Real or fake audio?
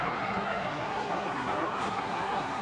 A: fake